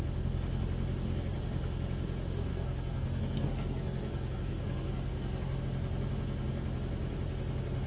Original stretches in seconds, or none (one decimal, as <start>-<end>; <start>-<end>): 0.0-2.5; 5.6-7.9

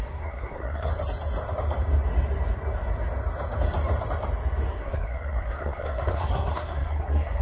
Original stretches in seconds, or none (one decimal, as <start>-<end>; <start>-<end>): 0.9-4.7

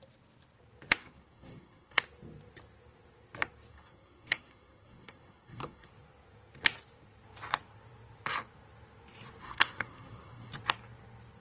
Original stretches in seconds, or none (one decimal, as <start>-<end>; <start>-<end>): 0.0-1.0; 2.0-3.7; 5.9-9.4; 10.5-11.4

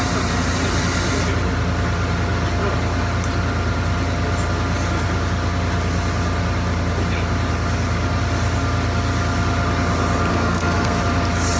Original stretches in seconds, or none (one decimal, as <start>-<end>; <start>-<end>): 0.0-10.3; 11.0-11.6

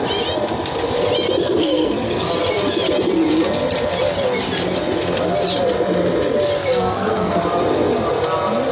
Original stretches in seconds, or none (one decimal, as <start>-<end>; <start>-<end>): 0.0-1.4; 2.3-6.7; 7.4-8.7

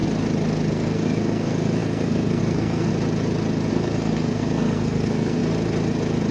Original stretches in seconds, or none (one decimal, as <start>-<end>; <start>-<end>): 0.0-0.7; 2.9-3.7; 5.4-6.3